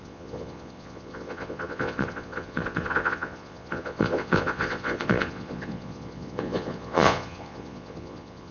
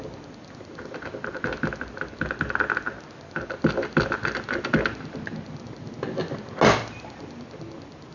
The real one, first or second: second